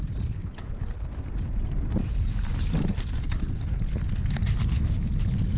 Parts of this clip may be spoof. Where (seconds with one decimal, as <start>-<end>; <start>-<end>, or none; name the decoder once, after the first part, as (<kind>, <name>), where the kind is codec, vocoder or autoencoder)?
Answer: 0.4-3.8 (vocoder, BigVGAN v2); 4.2-4.7